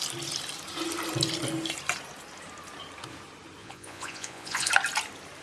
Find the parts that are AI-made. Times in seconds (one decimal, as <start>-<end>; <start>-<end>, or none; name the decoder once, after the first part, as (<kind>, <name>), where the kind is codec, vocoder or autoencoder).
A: 3.6-4.7 (vocoder, Vocos)